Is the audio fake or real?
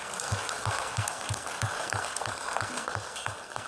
fake